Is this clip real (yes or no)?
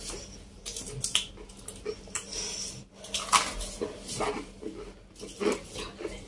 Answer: yes